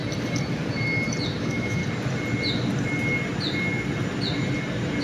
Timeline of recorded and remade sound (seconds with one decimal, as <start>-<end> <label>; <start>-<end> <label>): 0.0-1.4 recorded; 1.4-1.8 remade; 1.8-5.0 recorded